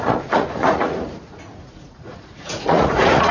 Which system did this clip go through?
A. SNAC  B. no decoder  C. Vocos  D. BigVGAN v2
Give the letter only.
C